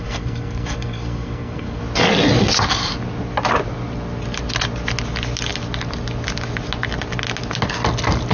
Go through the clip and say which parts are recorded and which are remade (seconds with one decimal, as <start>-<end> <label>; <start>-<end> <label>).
0.0-1.8 remade; 1.8-8.3 recorded